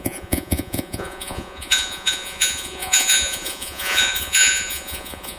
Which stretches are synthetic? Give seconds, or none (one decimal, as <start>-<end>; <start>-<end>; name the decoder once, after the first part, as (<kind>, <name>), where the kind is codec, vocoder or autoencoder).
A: 0.0-5.4 (vocoder, Vocos)